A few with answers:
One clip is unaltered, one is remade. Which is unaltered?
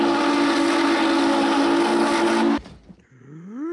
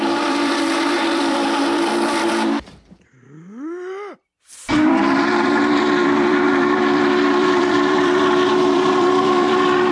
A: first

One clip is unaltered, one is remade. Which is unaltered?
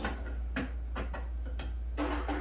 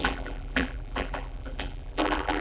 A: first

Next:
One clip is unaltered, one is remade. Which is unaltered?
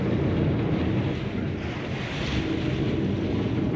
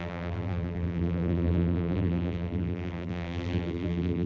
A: first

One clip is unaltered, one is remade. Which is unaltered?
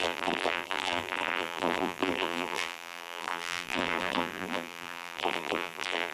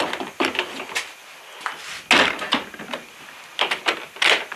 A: second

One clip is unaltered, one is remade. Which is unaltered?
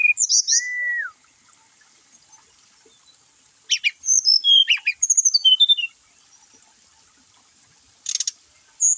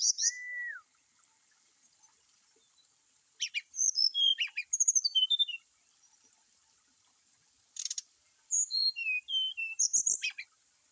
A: first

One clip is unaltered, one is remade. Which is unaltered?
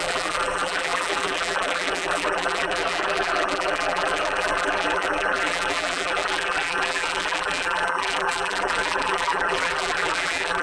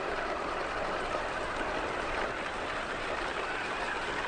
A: second